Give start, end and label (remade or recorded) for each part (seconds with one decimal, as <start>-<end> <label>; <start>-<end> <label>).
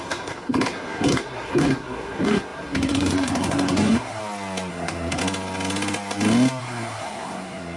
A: 0.0-4.2 remade; 4.2-4.7 recorded; 4.7-5.2 remade; 5.2-6.6 recorded; 6.6-7.8 remade